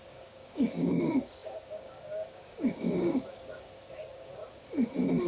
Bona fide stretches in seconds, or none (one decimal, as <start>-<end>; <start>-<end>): 4.4-5.3